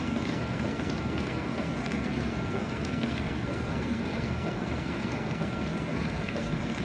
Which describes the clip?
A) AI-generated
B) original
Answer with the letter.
A